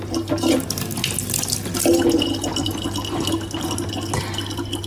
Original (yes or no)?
yes